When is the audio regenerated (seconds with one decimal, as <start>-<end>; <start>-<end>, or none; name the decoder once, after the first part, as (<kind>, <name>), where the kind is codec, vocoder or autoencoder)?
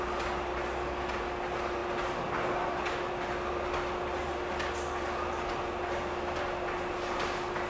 none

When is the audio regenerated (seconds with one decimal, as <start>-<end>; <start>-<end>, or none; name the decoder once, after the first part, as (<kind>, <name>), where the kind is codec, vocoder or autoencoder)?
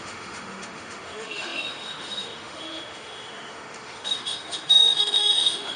0.0-5.8 (autoencoder, DAC-VAE)